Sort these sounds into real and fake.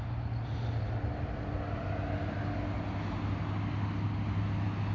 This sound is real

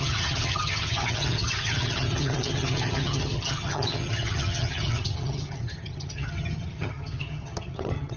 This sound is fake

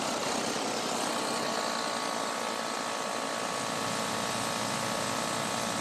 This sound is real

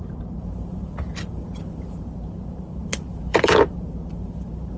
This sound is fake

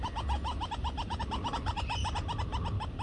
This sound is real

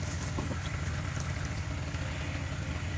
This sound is real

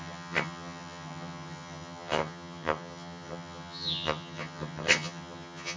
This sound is fake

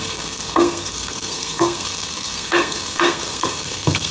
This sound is fake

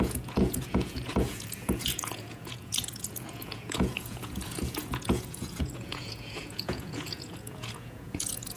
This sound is fake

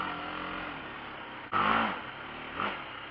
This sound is real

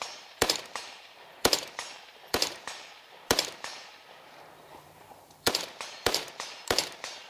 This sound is fake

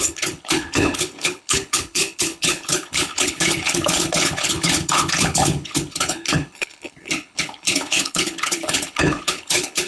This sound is fake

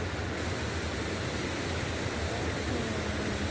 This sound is real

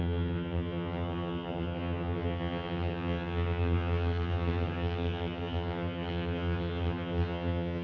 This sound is fake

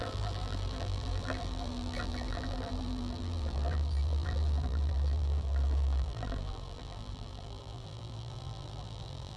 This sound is fake